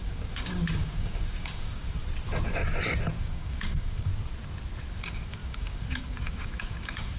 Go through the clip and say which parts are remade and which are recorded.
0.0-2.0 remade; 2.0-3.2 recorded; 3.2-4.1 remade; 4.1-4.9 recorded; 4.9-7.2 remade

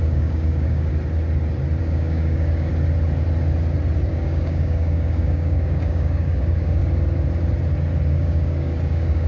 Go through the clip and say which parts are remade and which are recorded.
0.0-0.9 remade; 0.9-1.8 recorded; 1.8-2.7 remade; 2.7-4.1 recorded; 4.1-6.8 remade; 6.8-8.1 recorded; 8.1-9.3 remade

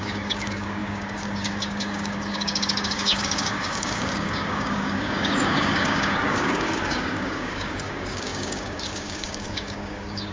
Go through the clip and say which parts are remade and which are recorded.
0.0-10.3 remade